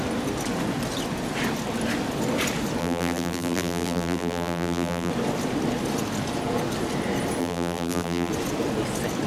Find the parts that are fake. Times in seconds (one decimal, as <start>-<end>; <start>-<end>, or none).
2.8-5.1; 7.4-8.3